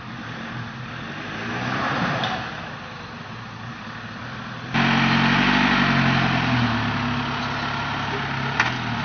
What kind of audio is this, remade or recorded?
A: recorded